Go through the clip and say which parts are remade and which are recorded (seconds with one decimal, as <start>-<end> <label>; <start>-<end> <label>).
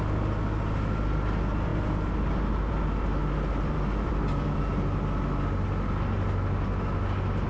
0.0-3.2 recorded; 3.2-4.6 remade; 4.6-7.5 recorded